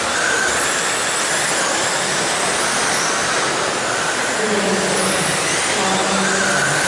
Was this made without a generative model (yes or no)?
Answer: yes